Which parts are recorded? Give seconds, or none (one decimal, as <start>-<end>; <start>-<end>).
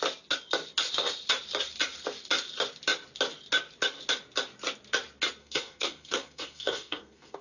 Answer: 0.0-5.4